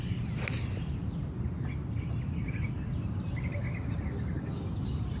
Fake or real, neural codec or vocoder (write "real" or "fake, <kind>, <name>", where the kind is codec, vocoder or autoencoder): real